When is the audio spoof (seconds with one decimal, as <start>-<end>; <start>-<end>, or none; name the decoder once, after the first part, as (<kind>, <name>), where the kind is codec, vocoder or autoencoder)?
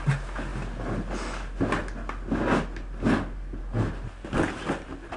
none